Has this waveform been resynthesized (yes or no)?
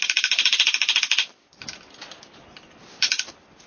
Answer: no